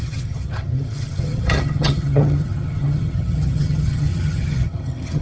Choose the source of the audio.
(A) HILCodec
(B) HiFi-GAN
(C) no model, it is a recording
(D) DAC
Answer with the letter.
B